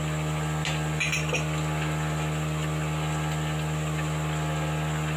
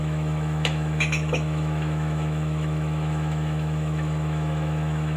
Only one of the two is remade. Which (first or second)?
second